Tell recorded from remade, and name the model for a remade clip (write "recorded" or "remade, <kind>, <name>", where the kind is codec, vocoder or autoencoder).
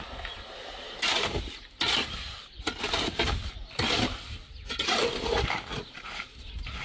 recorded